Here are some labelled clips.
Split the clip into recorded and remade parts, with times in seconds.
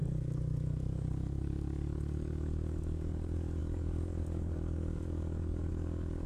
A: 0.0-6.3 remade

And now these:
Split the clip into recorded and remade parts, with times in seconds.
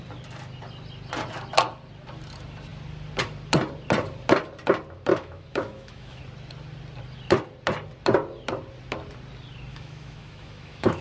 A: 0.0-5.1 recorded; 5.1-6.2 remade; 6.2-9.7 recorded; 9.7-11.0 remade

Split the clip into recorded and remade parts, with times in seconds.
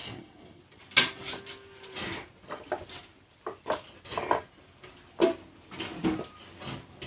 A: 0.0-0.6 remade; 0.6-7.1 recorded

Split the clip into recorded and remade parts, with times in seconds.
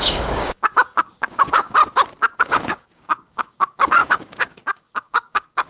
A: 0.0-1.8 remade; 1.8-2.4 recorded; 2.4-5.7 remade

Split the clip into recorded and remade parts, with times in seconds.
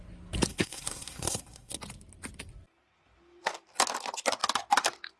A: 0.0-0.5 recorded; 0.5-1.8 remade; 1.8-5.2 recorded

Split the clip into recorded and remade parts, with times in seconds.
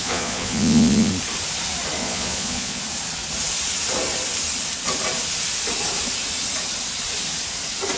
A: 0.0-1.1 remade; 1.1-2.0 recorded; 2.0-2.8 remade; 2.8-8.0 recorded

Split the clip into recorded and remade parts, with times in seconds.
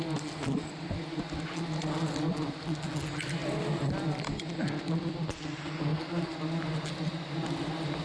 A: 0.0-8.0 recorded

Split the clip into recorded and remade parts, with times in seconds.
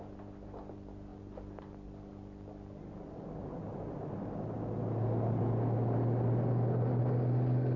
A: 0.0-7.8 recorded